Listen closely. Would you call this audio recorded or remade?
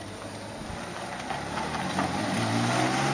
recorded